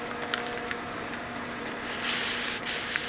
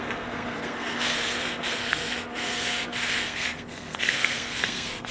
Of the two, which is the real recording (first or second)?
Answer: first